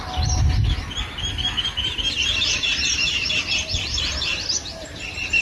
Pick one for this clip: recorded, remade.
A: recorded